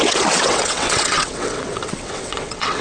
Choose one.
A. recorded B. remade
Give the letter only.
B